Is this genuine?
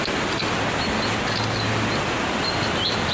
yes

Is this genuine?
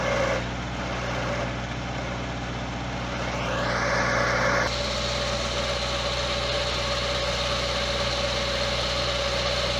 yes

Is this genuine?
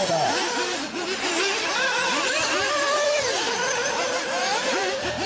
no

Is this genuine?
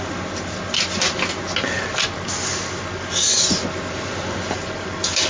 yes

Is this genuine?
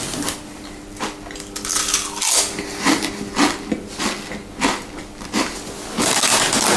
yes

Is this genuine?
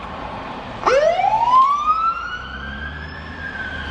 no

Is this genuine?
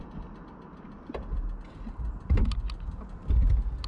yes